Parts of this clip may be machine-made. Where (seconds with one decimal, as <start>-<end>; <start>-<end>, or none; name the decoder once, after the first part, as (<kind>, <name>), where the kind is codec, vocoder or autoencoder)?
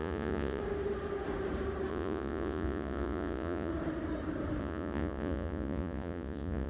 0.0-0.6 (vocoder, Vocos); 1.9-3.7; 4.6-6.7